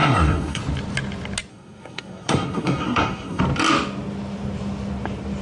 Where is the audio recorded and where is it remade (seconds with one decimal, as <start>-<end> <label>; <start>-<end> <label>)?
0.0-0.6 remade; 0.6-1.5 recorded; 1.5-3.4 remade; 3.4-5.4 recorded